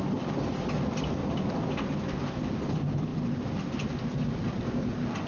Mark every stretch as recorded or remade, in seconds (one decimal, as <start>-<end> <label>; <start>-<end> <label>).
0.0-5.3 recorded